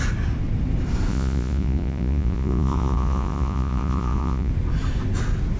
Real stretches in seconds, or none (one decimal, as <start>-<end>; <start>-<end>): 0.0-1.1; 4.5-5.6